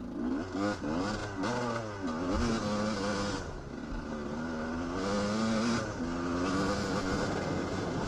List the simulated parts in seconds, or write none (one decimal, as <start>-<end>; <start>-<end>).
none